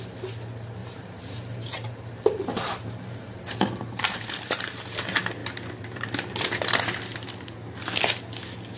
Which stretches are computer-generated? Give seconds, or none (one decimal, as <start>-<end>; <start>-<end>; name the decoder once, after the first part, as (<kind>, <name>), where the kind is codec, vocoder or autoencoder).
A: 0.8-5.0 (vocoder, BigVGAN v2); 5.4-6.8